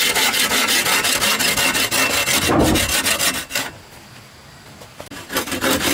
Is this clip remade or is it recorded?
recorded